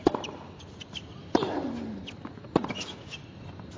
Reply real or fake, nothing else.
real